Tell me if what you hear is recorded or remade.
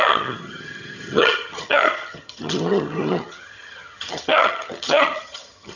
remade